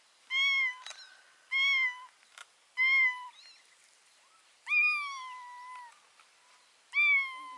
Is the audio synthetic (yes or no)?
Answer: no